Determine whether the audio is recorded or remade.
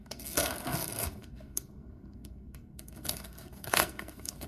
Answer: remade